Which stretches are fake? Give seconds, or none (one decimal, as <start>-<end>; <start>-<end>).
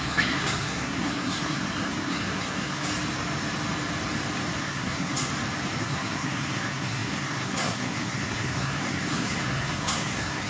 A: 0.0-2.9; 4.6-5.3; 5.8-10.5